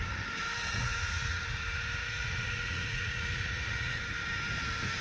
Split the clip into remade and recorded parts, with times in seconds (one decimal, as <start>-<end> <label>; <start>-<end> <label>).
0.0-0.7 recorded; 0.7-1.4 remade; 1.4-2.0 recorded; 2.0-4.0 remade; 4.0-5.0 recorded